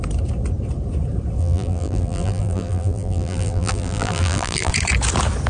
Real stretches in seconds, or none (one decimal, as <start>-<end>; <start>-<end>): 0.0-1.4; 4.7-5.5